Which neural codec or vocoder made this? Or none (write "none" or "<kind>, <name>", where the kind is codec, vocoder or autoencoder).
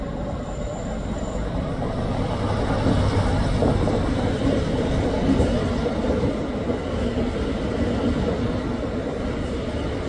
none